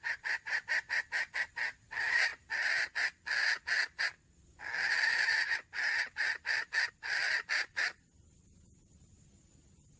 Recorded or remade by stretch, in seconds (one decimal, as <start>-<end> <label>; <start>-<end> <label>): 0.0-10.0 recorded